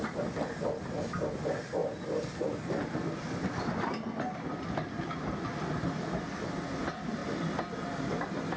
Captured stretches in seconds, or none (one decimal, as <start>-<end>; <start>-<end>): 0.0-8.6